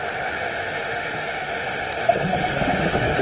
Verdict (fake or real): fake